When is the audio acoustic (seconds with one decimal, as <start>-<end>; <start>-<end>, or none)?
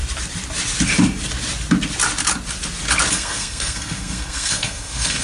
0.0-3.1